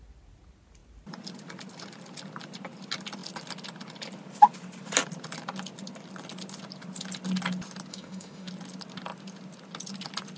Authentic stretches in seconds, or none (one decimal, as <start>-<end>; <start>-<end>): 0.0-7.9; 8.5-10.4